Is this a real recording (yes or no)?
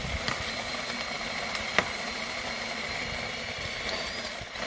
no